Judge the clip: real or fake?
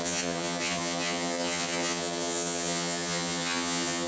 fake